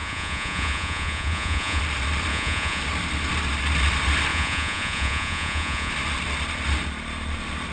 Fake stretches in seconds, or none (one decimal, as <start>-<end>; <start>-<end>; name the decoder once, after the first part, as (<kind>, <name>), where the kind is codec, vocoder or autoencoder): 0.0-1.8 (vocoder, Vocos); 2.3-2.8; 4.3-5.9